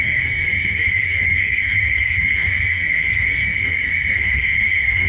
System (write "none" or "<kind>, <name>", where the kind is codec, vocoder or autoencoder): codec, SNAC